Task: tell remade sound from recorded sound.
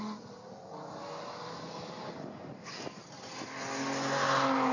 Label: recorded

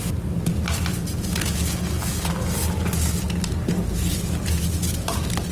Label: recorded